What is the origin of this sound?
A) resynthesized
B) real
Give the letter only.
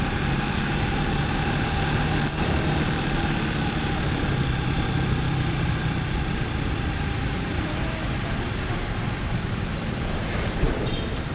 A